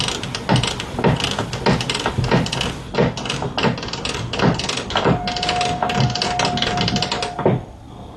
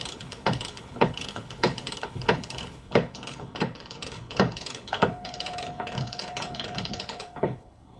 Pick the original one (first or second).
first